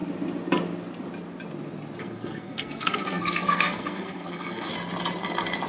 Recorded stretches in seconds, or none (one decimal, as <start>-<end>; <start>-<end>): 0.0-2.0; 4.7-5.7